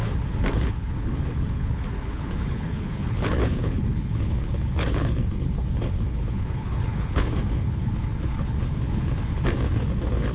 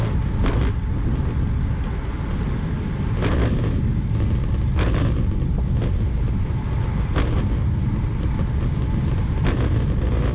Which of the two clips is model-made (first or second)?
first